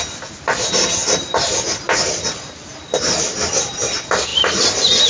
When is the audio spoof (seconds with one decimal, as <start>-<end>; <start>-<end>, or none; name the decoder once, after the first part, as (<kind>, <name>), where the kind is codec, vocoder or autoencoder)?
4.3-5.1 (vocoder, BigVGAN v2)